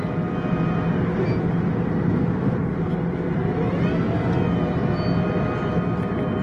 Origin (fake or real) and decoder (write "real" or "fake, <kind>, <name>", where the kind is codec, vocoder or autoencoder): real